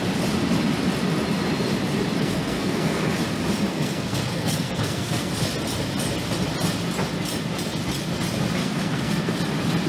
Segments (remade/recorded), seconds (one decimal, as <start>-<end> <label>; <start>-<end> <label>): 0.0-2.2 recorded; 2.2-3.2 remade; 3.2-3.7 recorded; 3.7-5.3 remade; 5.3-8.6 recorded; 8.6-9.4 remade; 9.4-9.9 recorded